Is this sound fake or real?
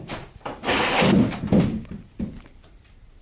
real